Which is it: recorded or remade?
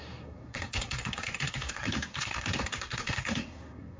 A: remade